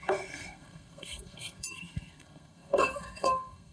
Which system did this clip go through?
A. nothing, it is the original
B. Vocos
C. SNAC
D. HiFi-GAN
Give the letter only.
C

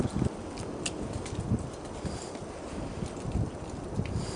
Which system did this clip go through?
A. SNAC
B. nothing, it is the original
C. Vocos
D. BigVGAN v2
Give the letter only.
B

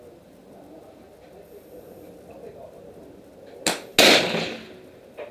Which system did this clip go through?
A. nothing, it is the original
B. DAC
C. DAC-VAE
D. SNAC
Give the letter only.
A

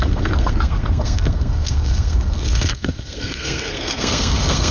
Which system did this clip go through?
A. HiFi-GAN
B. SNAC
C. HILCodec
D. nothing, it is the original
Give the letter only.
B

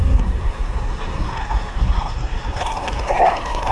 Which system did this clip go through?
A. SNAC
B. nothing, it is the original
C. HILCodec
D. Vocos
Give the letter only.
A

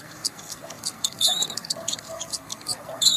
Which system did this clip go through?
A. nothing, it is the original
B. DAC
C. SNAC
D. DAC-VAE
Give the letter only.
C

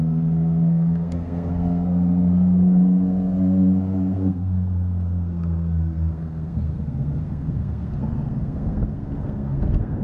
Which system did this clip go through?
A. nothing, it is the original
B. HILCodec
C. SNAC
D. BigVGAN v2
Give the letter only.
C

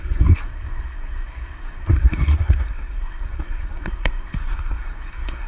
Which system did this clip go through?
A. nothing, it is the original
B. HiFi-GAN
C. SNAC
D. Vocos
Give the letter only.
C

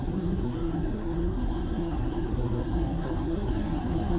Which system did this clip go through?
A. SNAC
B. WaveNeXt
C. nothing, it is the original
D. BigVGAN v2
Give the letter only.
A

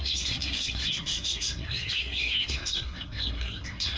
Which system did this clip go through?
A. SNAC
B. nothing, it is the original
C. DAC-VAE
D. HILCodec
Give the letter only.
A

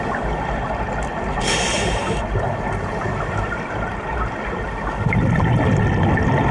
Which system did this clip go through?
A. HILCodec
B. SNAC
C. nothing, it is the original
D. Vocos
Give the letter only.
C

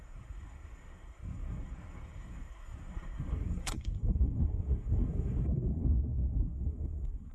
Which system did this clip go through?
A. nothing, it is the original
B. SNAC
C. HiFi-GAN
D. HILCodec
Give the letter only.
B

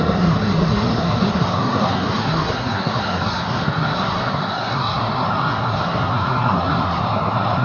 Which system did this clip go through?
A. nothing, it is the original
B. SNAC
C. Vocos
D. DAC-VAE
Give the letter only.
B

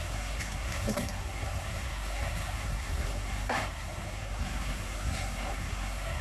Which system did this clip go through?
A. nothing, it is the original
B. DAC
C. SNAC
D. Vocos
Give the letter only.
C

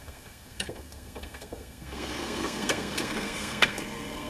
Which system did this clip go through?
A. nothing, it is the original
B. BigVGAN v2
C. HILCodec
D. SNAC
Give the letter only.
D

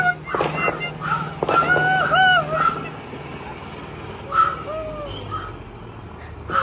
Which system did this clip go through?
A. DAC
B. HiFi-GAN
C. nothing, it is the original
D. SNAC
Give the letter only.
C